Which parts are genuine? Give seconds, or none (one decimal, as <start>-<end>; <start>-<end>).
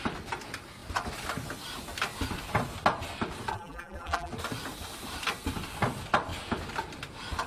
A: 0.0-3.5; 4.3-7.5